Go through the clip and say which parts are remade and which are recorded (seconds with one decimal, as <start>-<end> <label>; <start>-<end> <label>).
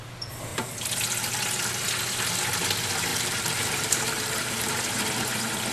0.0-3.1 recorded; 3.1-4.7 remade; 4.7-5.7 recorded